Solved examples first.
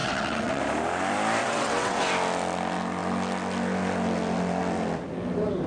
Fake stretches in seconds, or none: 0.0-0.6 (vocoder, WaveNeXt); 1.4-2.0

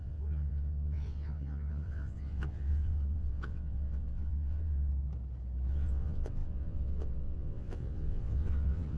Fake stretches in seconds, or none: 0.0-4.9 (vocoder, WaveNeXt); 5.7-9.0

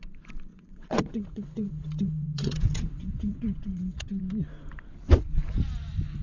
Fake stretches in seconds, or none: 0.5-4.2 (vocoder, WaveNeXt)

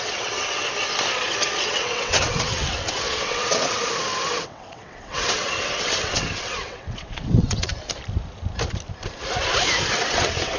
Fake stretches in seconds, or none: 0.0-0.6 (vocoder, WaveNeXt); 1.6-3.8; 4.3-7.7; 10.1-10.6

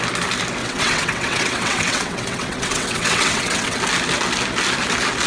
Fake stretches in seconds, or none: 0.6-3.8 (vocoder, WaveNeXt)